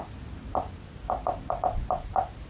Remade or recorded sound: recorded